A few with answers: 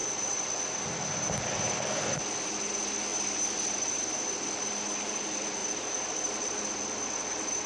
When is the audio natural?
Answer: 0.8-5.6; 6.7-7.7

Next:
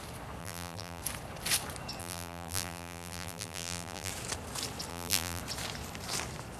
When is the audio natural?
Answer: 0.0-0.4; 1.0-2.0; 4.1-4.9; 5.4-6.6

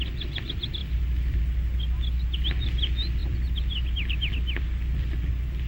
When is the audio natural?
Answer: 0.0-5.7

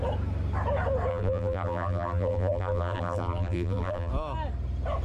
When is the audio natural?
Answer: 0.0-1.1; 4.1-5.0

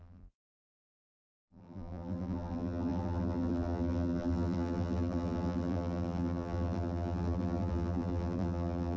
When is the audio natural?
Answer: none

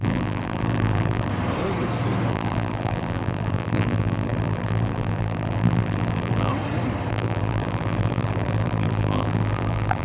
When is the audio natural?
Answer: 1.3-2.3; 6.5-7.1

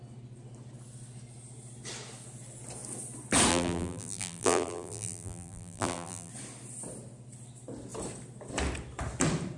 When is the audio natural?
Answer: 0.0-3.5; 6.3-9.6

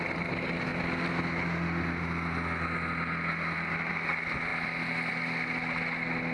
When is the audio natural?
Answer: 0.0-6.3